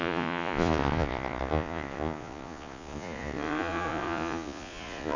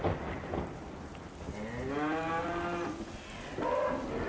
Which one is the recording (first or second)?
second